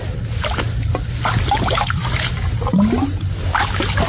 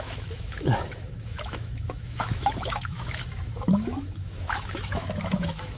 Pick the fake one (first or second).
second